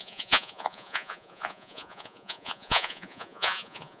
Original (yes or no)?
no